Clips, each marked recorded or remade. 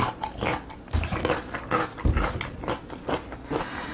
recorded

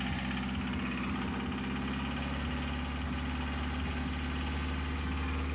recorded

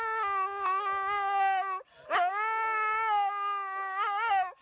recorded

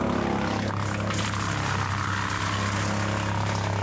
recorded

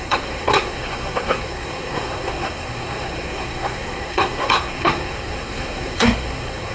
remade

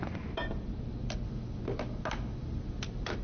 recorded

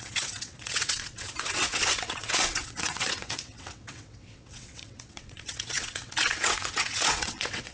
remade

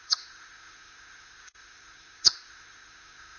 remade